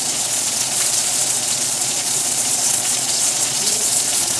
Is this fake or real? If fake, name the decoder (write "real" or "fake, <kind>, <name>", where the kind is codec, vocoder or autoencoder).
fake, vocoder, Vocos